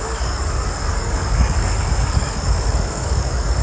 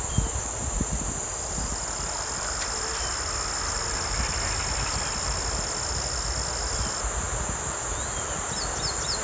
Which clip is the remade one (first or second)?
first